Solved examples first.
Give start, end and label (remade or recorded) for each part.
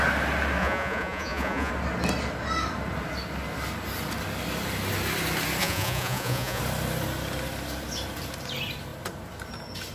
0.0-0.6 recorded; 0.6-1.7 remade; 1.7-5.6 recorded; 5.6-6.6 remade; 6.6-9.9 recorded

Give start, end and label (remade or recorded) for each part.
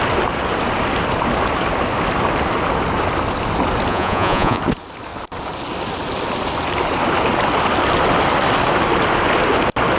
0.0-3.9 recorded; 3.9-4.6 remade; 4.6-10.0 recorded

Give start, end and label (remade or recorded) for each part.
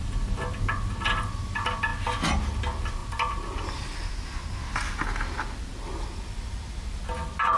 0.0-7.6 recorded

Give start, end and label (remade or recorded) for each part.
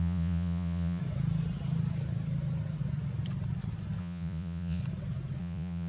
0.0-1.0 remade; 1.0-4.0 recorded; 4.0-4.8 remade; 4.8-5.4 recorded; 5.4-5.9 remade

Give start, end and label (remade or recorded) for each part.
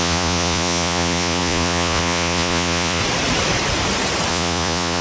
0.0-3.0 remade; 3.0-4.3 recorded; 4.3-5.0 remade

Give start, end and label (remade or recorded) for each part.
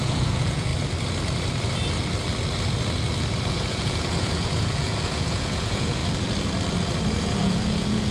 0.0-0.7 remade; 0.7-3.5 recorded; 3.5-6.0 remade; 6.0-7.2 recorded; 7.2-8.1 remade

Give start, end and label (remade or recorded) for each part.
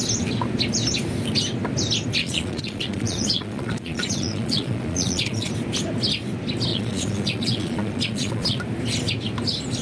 0.0-2.2 recorded; 2.2-5.5 remade; 5.5-6.7 recorded; 6.7-8.6 remade; 8.6-9.8 recorded